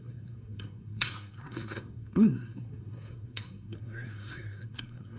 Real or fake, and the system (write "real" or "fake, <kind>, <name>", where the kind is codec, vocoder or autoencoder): fake, codec, SNAC